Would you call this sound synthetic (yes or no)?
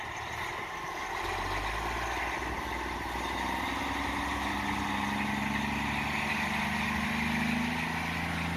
no